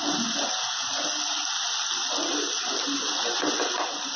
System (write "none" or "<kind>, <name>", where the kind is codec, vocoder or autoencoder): none